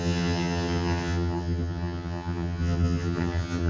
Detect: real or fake fake